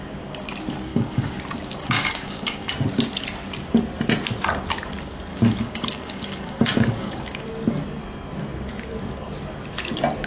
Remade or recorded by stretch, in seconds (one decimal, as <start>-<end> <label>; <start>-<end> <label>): 0.0-0.9 recorded; 0.9-1.4 remade; 1.4-1.8 recorded; 1.8-2.7 remade; 2.7-5.3 recorded; 5.3-7.2 remade; 7.2-10.3 recorded